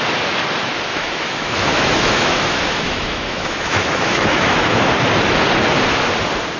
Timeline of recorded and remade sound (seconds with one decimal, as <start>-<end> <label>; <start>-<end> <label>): 0.0-0.9 recorded; 0.9-4.9 remade; 4.9-6.6 recorded